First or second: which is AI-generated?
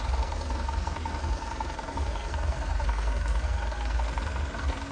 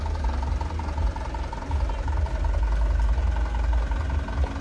first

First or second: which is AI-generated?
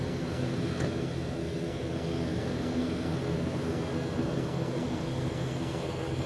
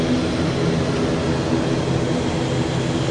first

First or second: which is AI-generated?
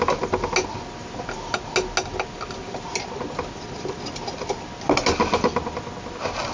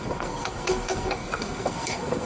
second